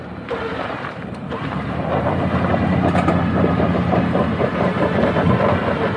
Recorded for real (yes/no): no